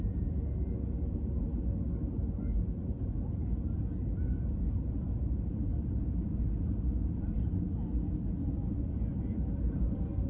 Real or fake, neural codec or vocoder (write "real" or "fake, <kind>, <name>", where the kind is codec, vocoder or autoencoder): fake, vocoder, BigVGAN v2